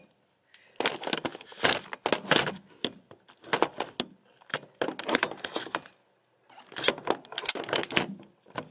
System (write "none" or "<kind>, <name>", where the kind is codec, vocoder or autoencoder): none